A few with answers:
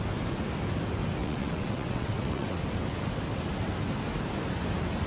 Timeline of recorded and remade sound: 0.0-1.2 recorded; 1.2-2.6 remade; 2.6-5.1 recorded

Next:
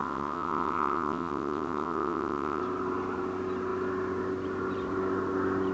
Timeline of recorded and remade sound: 0.0-2.6 remade; 2.6-5.7 recorded

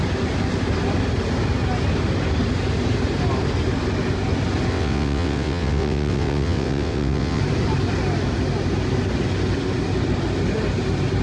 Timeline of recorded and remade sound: 0.0-4.7 recorded; 4.7-7.4 remade; 7.4-11.2 recorded

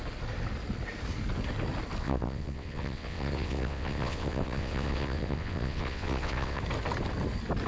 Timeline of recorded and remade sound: 0.0-2.0 recorded; 2.0-6.6 remade; 6.6-7.7 recorded

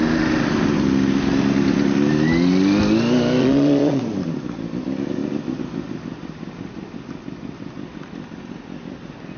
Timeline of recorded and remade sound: 0.0-3.4 recorded; 3.4-4.0 remade; 4.0-9.4 recorded